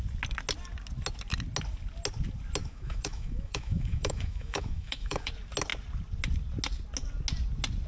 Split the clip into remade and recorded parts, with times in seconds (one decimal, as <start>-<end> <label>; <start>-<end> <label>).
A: 0.0-2.6 recorded; 2.6-5.3 remade; 5.3-7.9 recorded